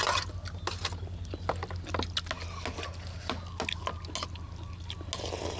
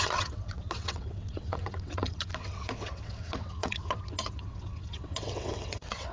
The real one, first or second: first